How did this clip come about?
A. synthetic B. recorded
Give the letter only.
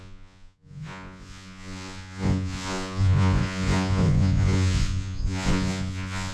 A